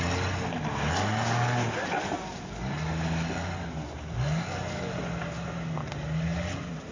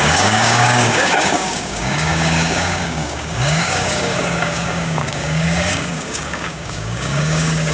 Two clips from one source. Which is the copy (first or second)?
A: second